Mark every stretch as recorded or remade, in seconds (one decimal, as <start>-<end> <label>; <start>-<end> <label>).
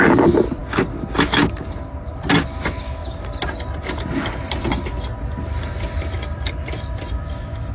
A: 0.0-7.7 recorded